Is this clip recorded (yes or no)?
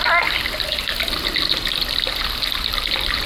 yes